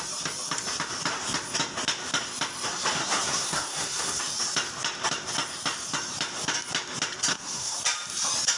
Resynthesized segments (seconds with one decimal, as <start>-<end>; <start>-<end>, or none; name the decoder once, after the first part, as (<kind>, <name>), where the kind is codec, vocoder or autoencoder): 3.0-4.2 (codec, SNAC); 7.3-7.8